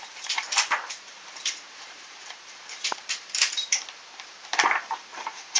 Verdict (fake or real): fake